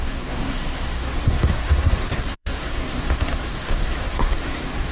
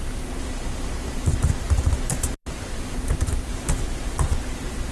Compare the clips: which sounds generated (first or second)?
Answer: first